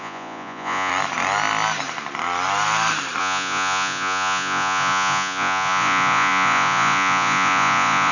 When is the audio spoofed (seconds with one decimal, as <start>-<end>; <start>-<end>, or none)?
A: 0.0-0.9; 3.2-8.1